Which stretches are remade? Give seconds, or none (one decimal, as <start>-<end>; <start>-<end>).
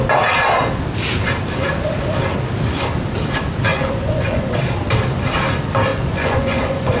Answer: 3.7-4.6; 5.9-7.0